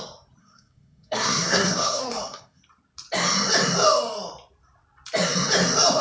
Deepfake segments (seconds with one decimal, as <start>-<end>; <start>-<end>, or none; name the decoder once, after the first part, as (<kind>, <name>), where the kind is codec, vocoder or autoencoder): 0.4-2.6 (codec, SNAC)